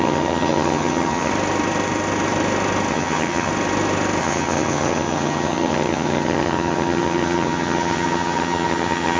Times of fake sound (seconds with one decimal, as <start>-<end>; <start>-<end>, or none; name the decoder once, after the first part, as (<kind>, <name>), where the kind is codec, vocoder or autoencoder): 0.0-1.3 (vocoder, HiFi-GAN); 2.9-3.5; 4.2-9.2